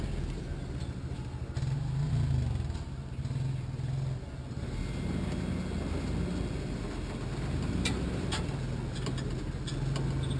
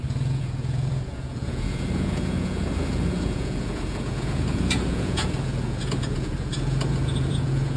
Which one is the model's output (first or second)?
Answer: second